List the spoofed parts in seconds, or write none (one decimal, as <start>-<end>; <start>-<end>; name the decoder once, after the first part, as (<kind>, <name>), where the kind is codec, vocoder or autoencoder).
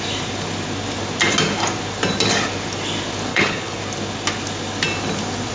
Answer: 3.3-3.8 (codec, HILCodec)